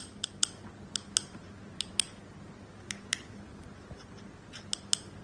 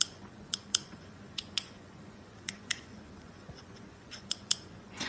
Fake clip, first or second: second